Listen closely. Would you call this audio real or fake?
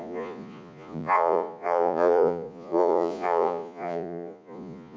fake